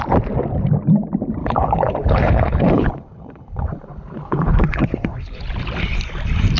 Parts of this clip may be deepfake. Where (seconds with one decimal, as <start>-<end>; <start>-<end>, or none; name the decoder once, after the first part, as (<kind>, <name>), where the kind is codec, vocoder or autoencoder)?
1.4-5.4 (codec, HILCodec)